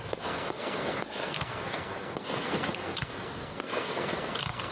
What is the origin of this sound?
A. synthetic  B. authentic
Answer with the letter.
A